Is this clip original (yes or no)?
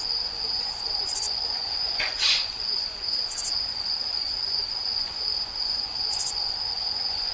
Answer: no